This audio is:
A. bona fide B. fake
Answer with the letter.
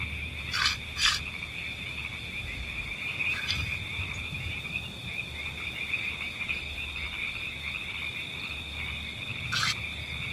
A